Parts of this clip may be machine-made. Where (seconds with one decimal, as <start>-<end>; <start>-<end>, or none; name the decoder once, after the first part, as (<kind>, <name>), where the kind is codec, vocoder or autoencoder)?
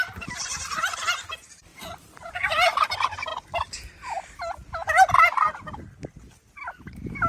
0.0-3.3 (vocoder, BigVGAN v2); 6.7-7.3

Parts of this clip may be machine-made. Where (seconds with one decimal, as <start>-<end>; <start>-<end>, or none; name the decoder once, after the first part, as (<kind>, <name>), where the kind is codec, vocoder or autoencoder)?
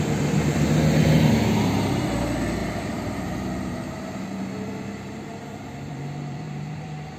2.6-7.2 (vocoder, BigVGAN v2)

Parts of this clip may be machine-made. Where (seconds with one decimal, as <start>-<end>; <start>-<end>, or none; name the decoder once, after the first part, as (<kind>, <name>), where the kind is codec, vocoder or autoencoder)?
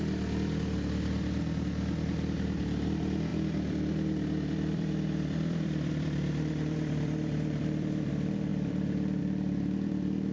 3.3-8.1 (vocoder, BigVGAN v2); 8.5-9.2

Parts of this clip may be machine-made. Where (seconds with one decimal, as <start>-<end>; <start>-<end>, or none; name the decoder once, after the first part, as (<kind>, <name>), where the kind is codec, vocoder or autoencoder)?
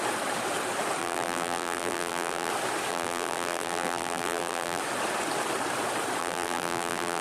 1.0-2.5 (vocoder, BigVGAN v2); 2.9-4.8; 6.2-7.2